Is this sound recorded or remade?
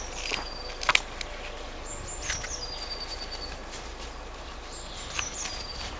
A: recorded